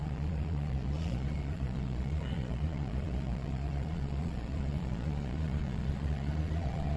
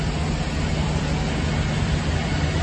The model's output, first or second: first